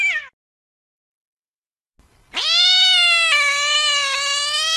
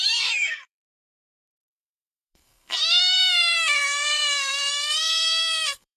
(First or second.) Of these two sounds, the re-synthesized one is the second